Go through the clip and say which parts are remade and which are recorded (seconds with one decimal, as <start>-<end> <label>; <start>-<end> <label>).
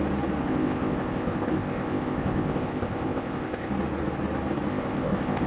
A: 0.0-0.4 recorded; 0.4-3.7 remade; 3.7-4.7 recorded; 4.7-5.5 remade